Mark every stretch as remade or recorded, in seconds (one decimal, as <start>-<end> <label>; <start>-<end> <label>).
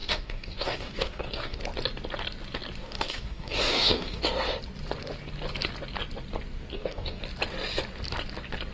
0.0-1.6 remade; 1.6-2.8 recorded; 2.8-4.2 remade; 4.2-6.7 recorded; 6.7-7.2 remade; 7.2-8.7 recorded